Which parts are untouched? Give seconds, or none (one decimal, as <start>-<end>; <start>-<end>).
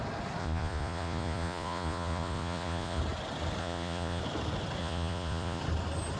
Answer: 0.0-0.4; 3.0-3.6; 4.2-4.8; 5.6-6.2